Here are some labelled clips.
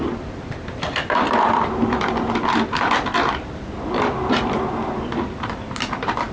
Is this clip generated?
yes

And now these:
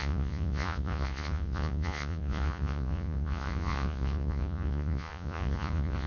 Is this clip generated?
yes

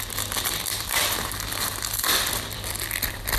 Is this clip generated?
yes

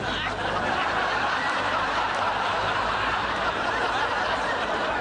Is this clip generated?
yes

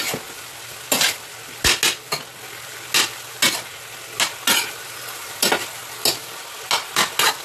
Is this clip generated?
no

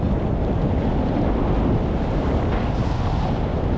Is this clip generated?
no